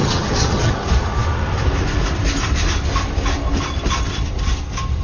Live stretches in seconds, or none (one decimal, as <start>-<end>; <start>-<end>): 0.7-5.0

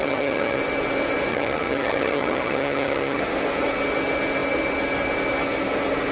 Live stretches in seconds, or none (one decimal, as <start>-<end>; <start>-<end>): 0.6-1.3; 3.2-6.1

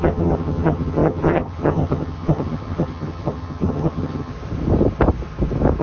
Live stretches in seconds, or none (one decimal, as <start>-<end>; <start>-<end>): 4.3-5.8

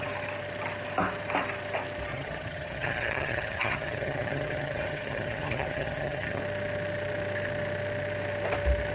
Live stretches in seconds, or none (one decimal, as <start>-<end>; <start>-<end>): 0.0-2.1; 6.4-8.9

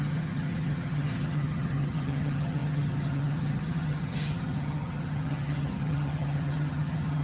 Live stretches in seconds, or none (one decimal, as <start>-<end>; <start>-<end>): none